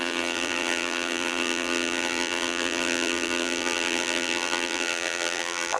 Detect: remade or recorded remade